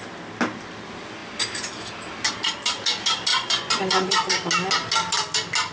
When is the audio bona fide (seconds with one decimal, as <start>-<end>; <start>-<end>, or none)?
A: 0.0-3.3; 4.3-5.7